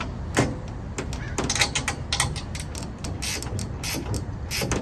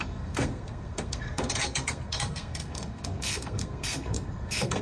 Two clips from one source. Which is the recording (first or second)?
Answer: first